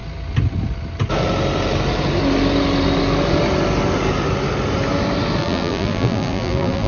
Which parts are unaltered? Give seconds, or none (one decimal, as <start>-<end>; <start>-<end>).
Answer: 0.0-5.4